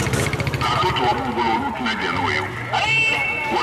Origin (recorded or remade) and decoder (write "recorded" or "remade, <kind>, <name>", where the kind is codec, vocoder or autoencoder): recorded